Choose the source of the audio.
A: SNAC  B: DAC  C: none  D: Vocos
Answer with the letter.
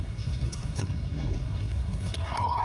A